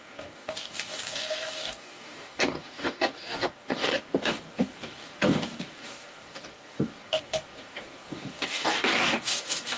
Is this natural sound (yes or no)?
no